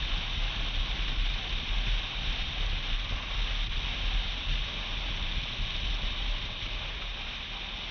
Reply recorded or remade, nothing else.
recorded